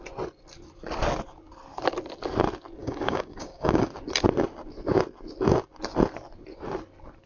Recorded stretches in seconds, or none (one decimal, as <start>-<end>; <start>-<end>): 0.0-2.8; 3.9-7.3